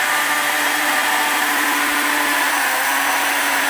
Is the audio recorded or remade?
remade